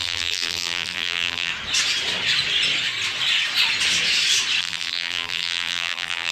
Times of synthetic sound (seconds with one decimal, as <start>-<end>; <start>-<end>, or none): 0.0-1.5; 4.6-6.3